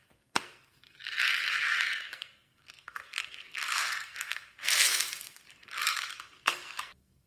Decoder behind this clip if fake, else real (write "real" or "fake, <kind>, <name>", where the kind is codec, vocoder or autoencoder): fake, codec, SNAC